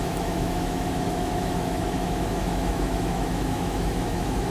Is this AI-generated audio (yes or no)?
yes